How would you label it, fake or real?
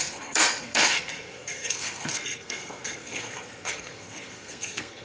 fake